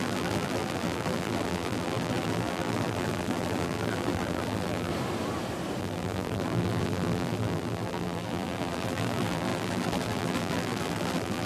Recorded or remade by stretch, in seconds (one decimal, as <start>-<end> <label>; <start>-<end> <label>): 0.0-4.9 remade; 4.9-5.8 recorded; 5.8-11.5 remade